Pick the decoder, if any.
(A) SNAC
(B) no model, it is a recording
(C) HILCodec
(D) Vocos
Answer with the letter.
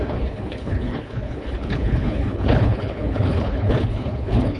C